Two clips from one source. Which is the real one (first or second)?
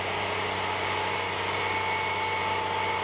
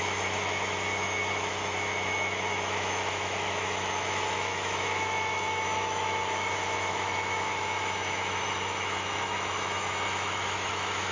first